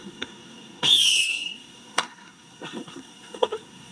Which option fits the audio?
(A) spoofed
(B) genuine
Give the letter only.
A